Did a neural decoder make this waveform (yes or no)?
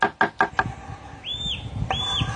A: no